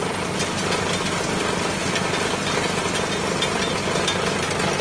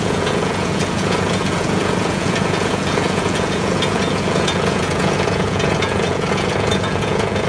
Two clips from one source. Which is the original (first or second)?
first